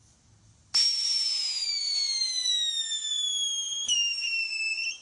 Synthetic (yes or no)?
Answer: no